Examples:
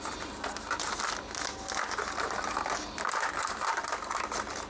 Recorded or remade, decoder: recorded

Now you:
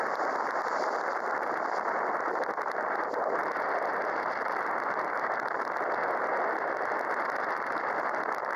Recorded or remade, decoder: remade, vocoder, BigVGAN v2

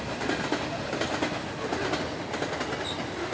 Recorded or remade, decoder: recorded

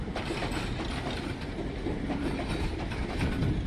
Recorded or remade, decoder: recorded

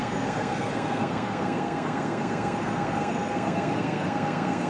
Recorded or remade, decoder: remade, codec, SNAC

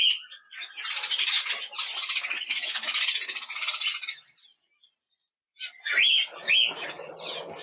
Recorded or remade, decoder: recorded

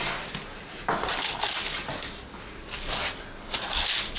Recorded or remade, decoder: recorded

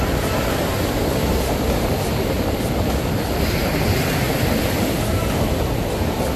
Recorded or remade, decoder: recorded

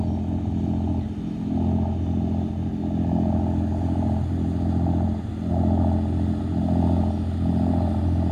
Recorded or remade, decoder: recorded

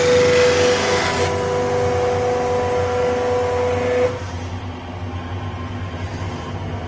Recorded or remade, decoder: recorded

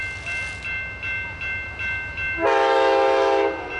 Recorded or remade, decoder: recorded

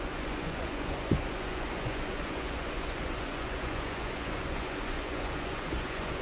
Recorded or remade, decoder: remade, vocoder, Vocos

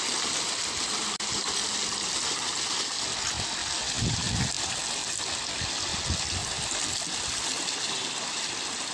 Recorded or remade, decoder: recorded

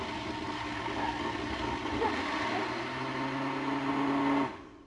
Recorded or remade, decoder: recorded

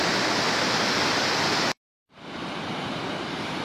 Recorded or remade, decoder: recorded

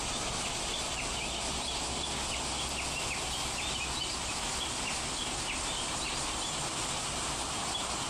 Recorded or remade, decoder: recorded